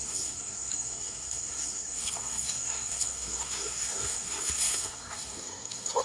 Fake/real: fake